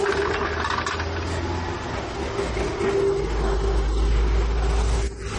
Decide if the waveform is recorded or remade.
recorded